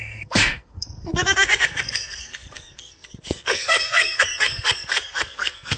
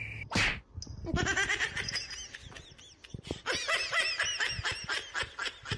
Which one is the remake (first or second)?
first